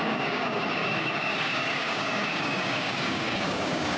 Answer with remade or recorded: remade